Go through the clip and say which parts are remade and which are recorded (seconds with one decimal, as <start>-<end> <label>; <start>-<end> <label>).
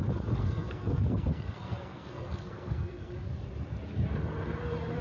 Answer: 0.0-0.4 recorded; 0.4-3.1 remade; 3.1-5.0 recorded